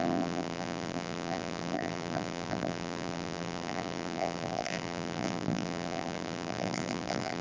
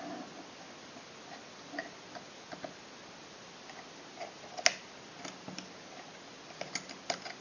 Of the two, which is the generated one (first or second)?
first